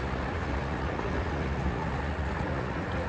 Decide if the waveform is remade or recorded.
remade